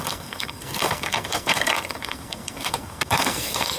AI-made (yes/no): yes